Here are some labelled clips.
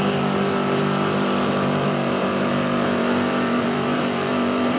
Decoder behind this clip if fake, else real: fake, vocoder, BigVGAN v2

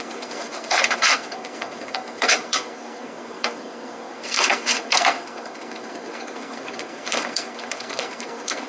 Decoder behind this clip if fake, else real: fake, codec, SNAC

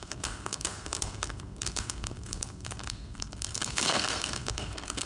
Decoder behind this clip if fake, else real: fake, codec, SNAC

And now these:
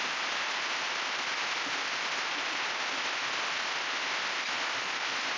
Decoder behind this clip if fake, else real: real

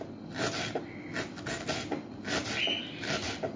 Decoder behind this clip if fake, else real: real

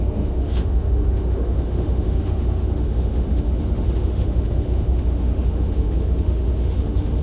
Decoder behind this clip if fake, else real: fake, autoencoder, DAC-VAE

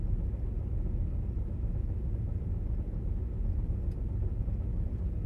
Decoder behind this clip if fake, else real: real